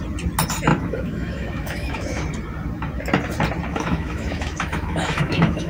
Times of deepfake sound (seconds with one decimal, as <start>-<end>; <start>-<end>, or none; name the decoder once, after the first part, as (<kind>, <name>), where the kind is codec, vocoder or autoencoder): 0.7-2.2 (autoencoder, DAC-VAE); 3.7-5.7